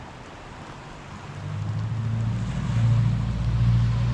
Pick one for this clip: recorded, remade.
recorded